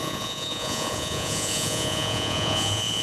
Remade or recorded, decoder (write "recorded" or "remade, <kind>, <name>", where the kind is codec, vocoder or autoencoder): remade, vocoder, Vocos